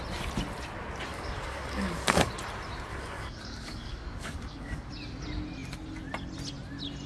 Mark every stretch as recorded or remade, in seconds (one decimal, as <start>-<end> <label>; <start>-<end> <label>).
0.0-1.1 recorded; 1.1-2.3 remade; 2.3-2.9 recorded; 2.9-4.9 remade; 4.9-7.1 recorded